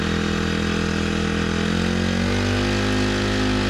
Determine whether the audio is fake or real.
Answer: real